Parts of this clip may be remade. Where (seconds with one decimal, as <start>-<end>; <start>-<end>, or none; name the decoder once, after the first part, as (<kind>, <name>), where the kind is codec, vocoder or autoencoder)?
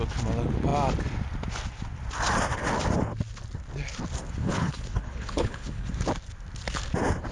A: 4.4-5.9 (codec, HILCodec)